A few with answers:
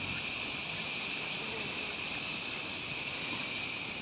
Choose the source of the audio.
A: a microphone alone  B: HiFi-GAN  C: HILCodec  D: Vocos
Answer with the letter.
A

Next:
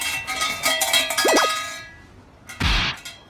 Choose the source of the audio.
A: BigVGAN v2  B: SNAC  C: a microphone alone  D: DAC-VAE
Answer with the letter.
C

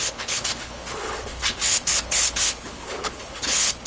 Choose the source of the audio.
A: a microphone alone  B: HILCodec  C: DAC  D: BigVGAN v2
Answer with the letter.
B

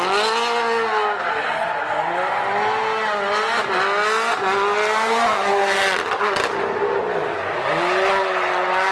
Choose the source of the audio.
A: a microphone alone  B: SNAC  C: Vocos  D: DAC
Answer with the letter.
A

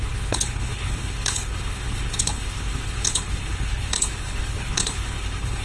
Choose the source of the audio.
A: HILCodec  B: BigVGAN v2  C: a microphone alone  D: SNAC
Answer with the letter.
A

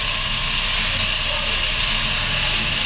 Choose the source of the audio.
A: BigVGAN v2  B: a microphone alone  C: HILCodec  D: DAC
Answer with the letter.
B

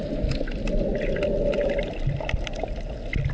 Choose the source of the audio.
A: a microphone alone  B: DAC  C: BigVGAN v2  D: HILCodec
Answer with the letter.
A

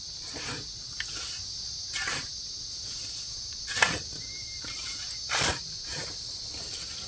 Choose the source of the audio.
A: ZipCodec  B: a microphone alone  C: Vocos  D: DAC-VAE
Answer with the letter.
B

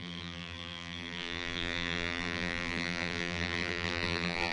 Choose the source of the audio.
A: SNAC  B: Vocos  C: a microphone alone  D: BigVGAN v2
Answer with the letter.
D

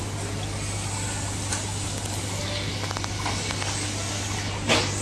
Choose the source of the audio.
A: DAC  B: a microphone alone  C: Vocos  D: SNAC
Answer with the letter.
B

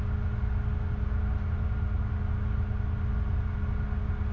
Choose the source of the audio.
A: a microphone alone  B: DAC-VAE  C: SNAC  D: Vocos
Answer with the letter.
A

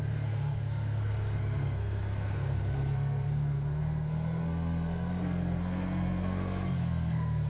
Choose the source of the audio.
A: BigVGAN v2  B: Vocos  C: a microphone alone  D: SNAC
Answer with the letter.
D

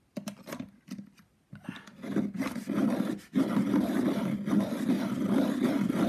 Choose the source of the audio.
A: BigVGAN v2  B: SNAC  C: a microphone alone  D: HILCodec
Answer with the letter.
C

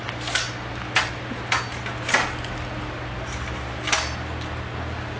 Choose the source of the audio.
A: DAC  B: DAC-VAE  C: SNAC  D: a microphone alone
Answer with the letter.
D